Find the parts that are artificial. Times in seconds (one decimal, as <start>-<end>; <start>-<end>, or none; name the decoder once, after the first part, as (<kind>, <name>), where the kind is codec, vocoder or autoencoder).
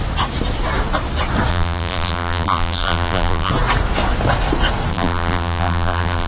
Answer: 1.5-3.5 (vocoder, BigVGAN v2); 4.9-6.3